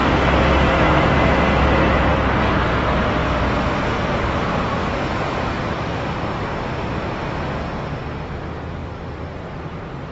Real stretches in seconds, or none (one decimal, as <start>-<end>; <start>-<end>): 0.0-4.8; 5.6-10.1